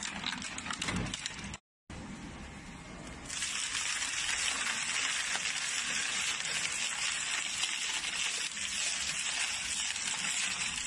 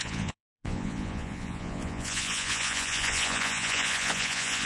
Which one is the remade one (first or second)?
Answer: second